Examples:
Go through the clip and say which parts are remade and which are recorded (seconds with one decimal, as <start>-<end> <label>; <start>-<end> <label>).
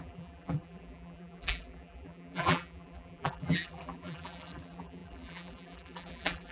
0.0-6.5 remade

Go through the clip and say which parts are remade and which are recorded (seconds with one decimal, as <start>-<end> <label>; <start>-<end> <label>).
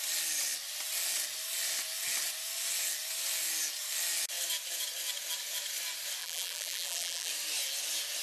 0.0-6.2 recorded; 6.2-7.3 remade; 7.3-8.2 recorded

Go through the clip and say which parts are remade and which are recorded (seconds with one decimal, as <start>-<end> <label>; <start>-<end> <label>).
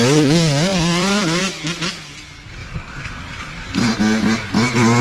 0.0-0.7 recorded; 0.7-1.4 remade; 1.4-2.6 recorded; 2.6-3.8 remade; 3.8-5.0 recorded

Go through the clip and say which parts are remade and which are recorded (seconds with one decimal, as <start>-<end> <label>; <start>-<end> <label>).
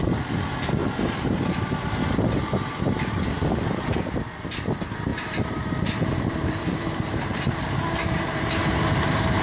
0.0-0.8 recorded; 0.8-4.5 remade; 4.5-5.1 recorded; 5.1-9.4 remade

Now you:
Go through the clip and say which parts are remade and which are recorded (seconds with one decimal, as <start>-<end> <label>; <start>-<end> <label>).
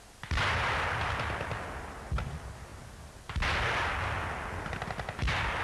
0.0-5.6 recorded